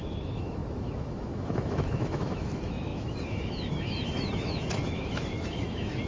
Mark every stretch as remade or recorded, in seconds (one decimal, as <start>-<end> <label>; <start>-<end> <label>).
0.0-6.1 remade